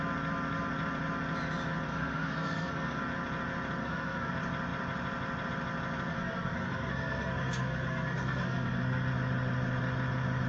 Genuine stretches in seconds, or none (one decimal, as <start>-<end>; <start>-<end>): 0.0-1.9; 3.0-3.8; 4.3-6.1; 9.1-10.5